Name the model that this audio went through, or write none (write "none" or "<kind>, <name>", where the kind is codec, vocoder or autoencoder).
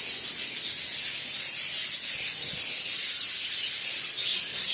none